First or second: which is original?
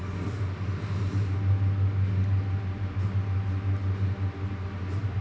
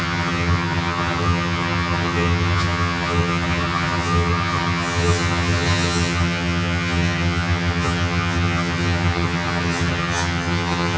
first